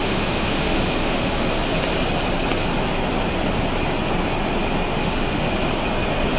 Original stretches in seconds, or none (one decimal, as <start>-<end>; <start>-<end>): 1.6-4.9; 5.5-6.4